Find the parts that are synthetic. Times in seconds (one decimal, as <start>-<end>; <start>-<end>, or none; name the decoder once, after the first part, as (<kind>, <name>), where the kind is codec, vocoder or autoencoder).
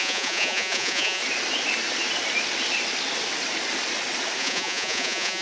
0.0-1.2 (vocoder, Vocos); 4.4-5.4